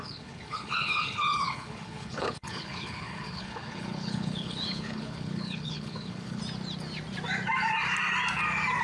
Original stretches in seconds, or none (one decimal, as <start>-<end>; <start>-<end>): 6.4-8.8